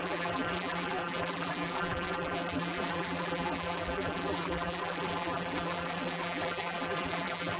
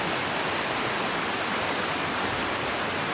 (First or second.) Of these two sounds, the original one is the second